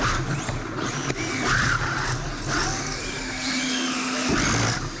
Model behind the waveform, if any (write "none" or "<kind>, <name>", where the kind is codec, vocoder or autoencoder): none